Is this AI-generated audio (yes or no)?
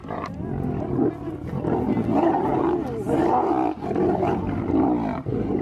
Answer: no